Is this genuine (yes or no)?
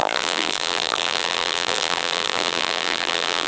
no